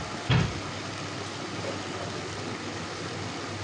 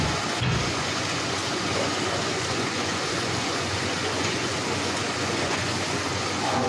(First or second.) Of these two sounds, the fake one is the second